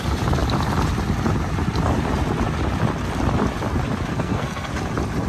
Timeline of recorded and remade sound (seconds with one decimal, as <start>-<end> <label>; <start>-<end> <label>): 0.0-4.1 recorded; 4.1-4.7 remade; 4.7-5.3 recorded